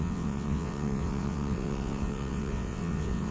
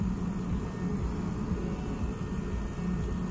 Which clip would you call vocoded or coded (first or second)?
first